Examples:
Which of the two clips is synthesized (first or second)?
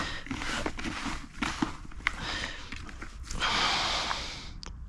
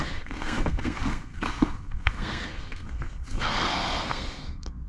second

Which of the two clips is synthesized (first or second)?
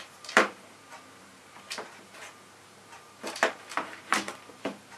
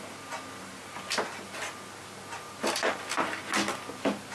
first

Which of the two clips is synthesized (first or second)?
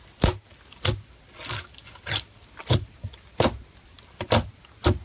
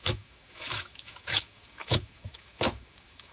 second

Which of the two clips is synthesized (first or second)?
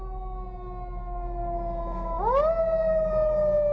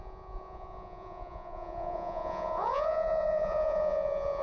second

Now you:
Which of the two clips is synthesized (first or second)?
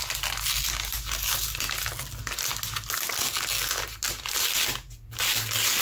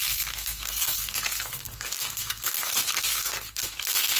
second